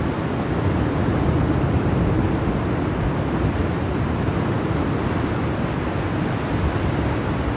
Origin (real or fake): real